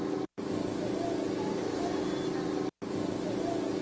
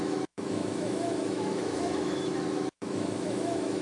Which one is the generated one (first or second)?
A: second